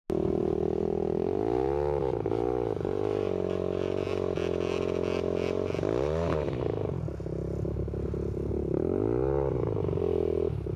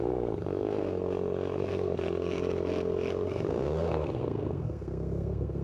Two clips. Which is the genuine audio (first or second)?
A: first